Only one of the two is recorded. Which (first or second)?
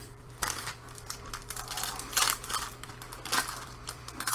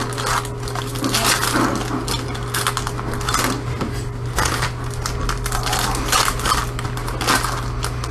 second